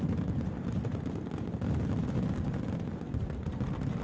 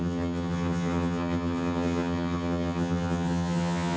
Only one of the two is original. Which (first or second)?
first